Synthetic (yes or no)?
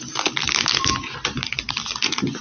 no